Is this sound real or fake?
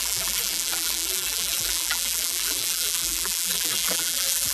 fake